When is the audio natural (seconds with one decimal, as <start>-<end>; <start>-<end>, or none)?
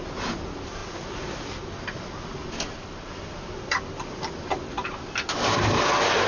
0.0-6.3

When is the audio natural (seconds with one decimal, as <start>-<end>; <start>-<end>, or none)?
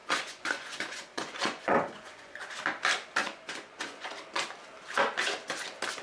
2.5-3.2; 4.1-6.0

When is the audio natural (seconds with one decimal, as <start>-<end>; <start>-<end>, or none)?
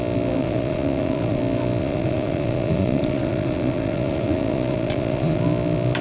0.0-0.4; 1.4-1.8; 5.4-6.0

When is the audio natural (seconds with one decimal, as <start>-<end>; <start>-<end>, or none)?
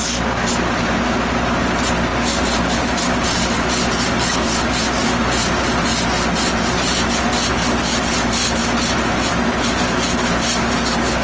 0.0-11.2